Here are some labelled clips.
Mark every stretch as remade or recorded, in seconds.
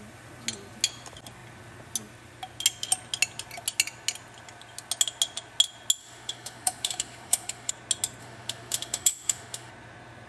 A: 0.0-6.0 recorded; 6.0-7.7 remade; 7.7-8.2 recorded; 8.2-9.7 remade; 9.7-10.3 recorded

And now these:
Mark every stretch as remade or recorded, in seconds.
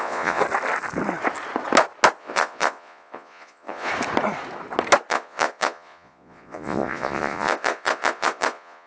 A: 0.0-0.4 remade; 0.4-2.2 recorded; 2.2-3.9 remade; 3.9-5.1 recorded; 5.1-8.9 remade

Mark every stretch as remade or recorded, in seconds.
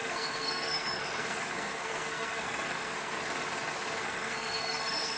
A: 0.0-3.2 remade; 3.2-4.0 recorded; 4.0-5.2 remade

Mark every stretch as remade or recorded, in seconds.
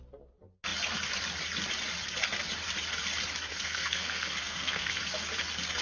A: 0.0-3.5 recorded; 3.5-5.0 remade; 5.0-5.8 recorded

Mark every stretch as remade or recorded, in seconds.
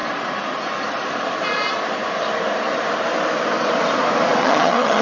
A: 0.0-4.4 recorded; 4.4-5.0 remade